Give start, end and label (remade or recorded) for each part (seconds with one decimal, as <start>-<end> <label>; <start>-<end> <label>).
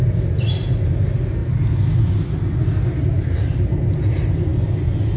0.0-5.2 recorded